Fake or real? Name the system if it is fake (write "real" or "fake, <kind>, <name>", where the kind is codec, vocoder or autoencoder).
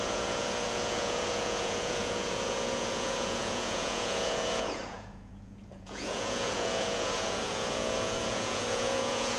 fake, vocoder, Vocos